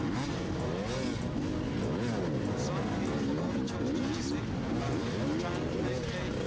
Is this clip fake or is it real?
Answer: real